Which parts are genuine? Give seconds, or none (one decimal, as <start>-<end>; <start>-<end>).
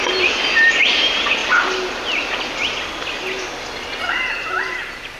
1.4-4.1